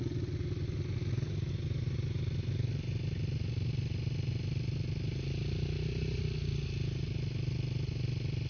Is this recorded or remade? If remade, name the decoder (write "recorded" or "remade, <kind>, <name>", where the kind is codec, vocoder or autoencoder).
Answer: recorded